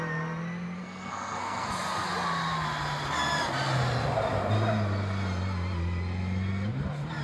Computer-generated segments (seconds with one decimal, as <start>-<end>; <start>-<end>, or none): 0.8-1.7